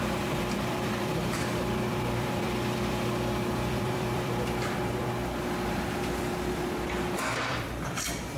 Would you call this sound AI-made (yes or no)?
yes